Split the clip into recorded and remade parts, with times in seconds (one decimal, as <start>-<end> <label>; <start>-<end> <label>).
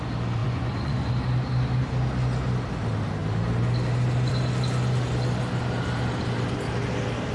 0.0-0.4 recorded; 0.4-1.1 remade; 1.1-7.3 recorded